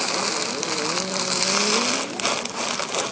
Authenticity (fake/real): real